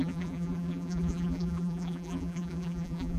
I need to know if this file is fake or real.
fake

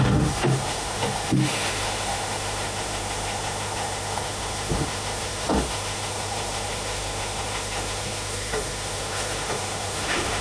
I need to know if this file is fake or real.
fake